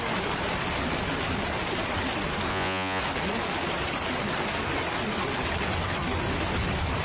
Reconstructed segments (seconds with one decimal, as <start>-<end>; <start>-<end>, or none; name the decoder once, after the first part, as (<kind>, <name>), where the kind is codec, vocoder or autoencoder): 2.5-3.0 (vocoder, Vocos)